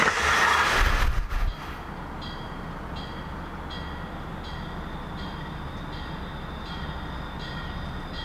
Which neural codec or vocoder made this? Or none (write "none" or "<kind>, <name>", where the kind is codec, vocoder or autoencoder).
none